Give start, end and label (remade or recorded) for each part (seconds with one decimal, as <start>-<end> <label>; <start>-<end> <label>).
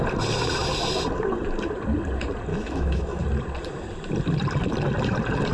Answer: 0.0-2.5 recorded; 2.5-3.2 remade; 3.2-5.5 recorded